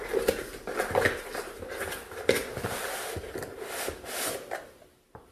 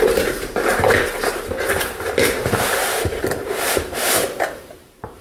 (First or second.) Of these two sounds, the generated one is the second